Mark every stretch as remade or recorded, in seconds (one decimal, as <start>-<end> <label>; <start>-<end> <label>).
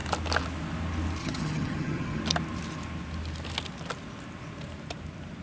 0.0-1.2 recorded; 1.2-2.2 remade; 2.2-5.4 recorded